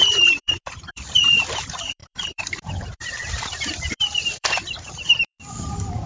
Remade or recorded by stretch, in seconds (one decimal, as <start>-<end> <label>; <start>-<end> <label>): 0.0-6.1 remade